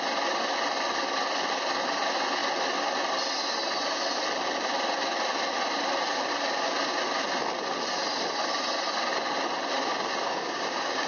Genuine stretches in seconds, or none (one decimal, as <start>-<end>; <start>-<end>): 0.0-10.2